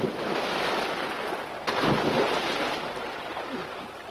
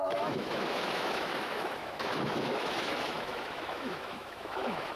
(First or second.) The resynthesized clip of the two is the second